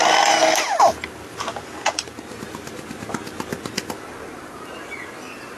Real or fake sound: real